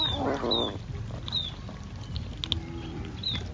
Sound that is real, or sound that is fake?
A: real